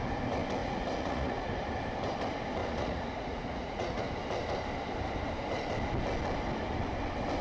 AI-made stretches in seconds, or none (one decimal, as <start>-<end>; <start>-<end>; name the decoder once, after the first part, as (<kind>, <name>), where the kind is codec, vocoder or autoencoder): 0.6-1.5 (vocoder, Vocos); 2.6-4.1